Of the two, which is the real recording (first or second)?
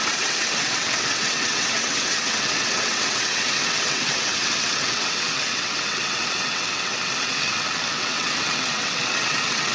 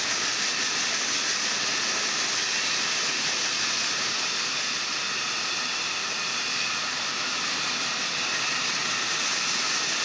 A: second